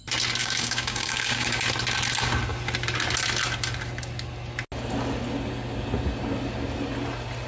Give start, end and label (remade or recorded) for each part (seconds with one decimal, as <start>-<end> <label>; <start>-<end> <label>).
0.0-0.4 recorded; 0.4-1.6 remade; 1.6-7.5 recorded